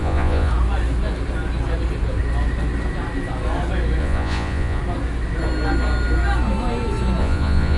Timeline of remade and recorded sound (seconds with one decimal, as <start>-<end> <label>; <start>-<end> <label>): 0.0-0.5 remade; 0.5-4.0 recorded; 4.0-4.8 remade; 4.8-7.2 recorded; 7.2-7.8 remade